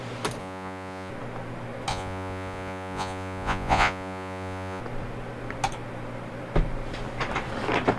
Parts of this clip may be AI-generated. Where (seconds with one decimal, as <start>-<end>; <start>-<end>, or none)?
0.4-1.1; 1.9-4.8